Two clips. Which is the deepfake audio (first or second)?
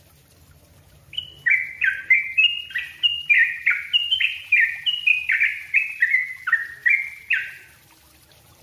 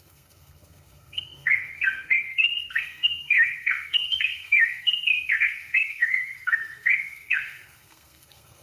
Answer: second